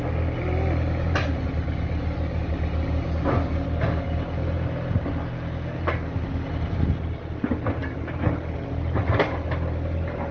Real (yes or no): yes